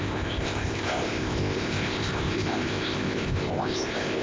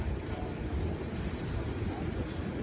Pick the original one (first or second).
second